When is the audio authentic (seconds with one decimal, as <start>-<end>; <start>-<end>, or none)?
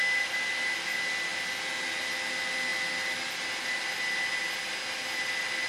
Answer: 0.0-5.7